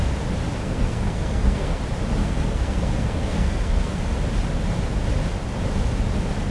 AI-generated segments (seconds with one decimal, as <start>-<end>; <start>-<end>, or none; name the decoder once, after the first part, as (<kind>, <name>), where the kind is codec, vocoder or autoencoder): 0.6-1.8 (codec, SNAC); 2.2-4.0